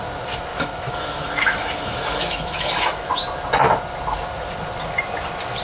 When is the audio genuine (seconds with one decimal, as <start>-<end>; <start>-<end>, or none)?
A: 0.0-0.5; 3.1-5.6